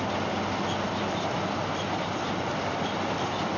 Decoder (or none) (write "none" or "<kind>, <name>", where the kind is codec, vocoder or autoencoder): none